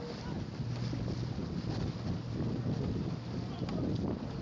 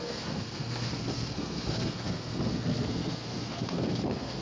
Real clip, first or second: first